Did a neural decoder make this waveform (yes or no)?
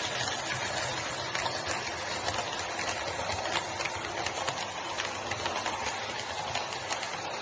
no